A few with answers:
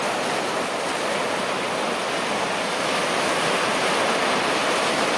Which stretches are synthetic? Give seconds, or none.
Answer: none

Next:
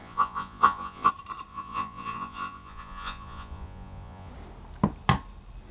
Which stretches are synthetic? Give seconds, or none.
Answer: 0.0-1.1 (vocoder, Vocos); 1.5-4.3

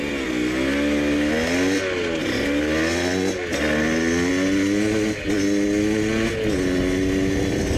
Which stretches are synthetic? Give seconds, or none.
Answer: none